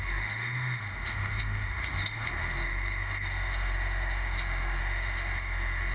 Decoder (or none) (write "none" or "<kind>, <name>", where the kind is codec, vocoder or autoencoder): autoencoder, DAC-VAE